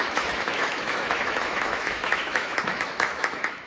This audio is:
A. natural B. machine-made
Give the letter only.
B